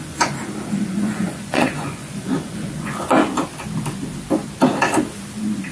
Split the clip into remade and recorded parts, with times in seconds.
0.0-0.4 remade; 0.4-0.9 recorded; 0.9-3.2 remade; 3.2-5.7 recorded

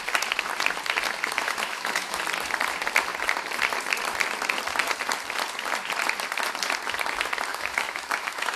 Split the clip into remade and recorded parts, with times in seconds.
0.0-1.4 recorded; 1.4-2.2 remade; 2.2-7.5 recorded; 7.5-8.6 remade

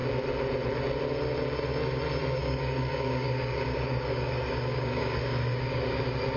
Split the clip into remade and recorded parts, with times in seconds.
0.0-2.4 recorded; 2.4-6.0 remade; 6.0-6.4 recorded

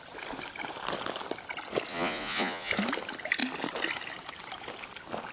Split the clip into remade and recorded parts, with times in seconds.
0.0-1.9 recorded; 1.9-2.7 remade; 2.7-5.3 recorded

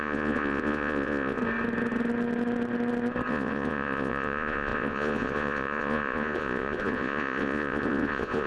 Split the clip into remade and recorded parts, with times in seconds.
0.0-1.4 remade; 1.4-3.3 recorded; 3.3-8.5 remade

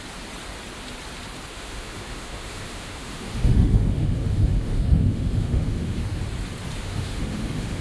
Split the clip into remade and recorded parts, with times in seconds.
0.0-1.5 recorded; 1.5-6.2 remade; 6.2-6.8 recorded; 6.8-7.8 remade

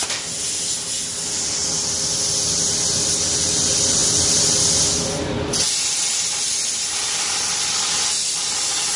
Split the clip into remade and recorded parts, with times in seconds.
0.0-9.0 recorded